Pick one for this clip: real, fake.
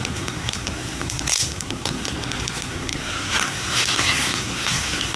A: fake